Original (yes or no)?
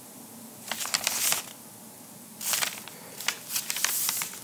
yes